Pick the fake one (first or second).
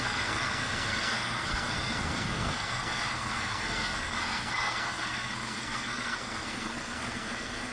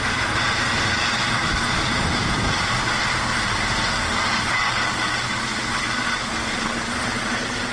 first